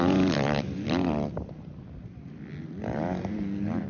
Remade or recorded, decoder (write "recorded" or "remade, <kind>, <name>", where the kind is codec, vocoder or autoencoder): remade, vocoder, BigVGAN v2